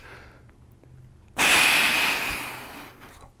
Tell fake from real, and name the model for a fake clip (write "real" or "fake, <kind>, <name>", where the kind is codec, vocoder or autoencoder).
real